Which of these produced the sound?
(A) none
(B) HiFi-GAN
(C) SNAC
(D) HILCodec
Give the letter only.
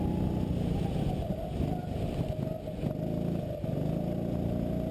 A